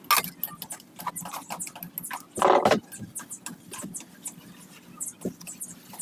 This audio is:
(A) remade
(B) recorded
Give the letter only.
B